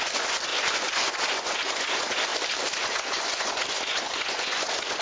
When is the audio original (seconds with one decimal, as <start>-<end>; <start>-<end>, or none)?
2.3-2.8